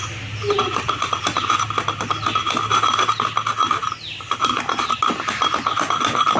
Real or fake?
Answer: real